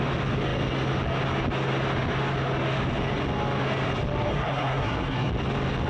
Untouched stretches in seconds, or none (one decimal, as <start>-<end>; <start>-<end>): 0.0-4.3; 5.3-5.9